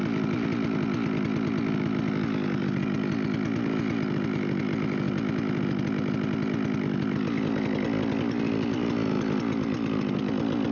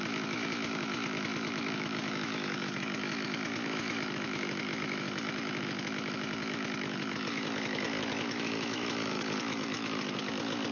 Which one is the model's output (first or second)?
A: second